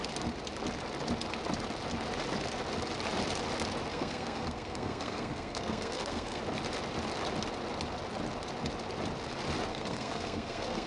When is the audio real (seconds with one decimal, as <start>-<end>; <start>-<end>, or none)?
0.0-3.9; 6.4-9.7